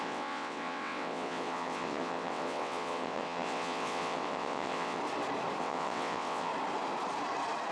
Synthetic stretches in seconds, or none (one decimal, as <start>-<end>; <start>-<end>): 0.0-5.0; 5.6-6.5

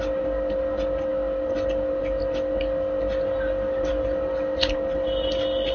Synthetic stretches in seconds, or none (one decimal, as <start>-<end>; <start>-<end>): none

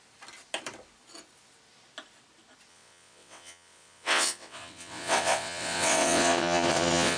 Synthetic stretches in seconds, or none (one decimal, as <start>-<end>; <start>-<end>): 2.7-7.2

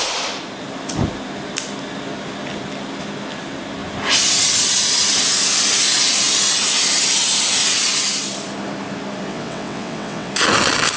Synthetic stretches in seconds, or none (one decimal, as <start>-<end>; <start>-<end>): 9.3-10.3

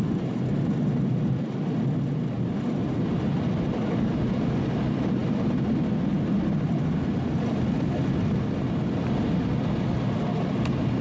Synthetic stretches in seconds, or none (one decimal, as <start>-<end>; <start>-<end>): none

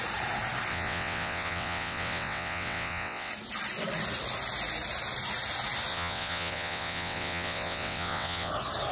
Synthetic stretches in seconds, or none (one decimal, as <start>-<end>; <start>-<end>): 0.7-3.3; 5.9-8.5

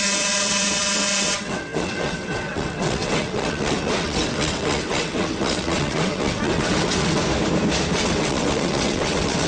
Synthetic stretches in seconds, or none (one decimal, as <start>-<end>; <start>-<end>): 0.0-7.2; 7.9-9.5

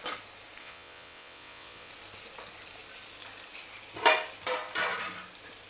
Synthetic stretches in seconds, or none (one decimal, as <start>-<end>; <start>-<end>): 0.6-1.9